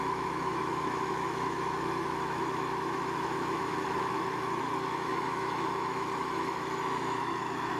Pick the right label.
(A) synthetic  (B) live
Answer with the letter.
A